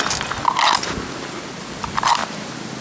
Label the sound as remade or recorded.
recorded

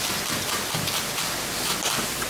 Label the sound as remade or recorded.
recorded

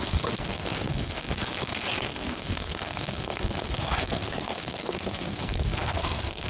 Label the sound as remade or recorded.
remade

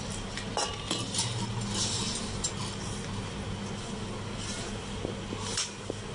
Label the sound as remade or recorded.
recorded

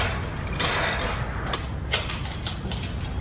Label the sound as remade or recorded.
recorded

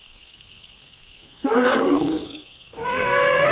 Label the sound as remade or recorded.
remade